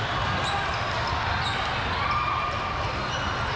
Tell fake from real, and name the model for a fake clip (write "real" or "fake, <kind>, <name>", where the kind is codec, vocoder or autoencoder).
real